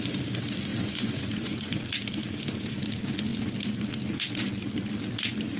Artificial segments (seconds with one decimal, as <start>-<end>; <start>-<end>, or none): 0.7-1.8